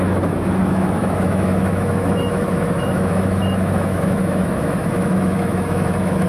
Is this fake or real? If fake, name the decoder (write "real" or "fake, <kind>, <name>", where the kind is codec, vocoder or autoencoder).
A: fake, autoencoder, DAC-VAE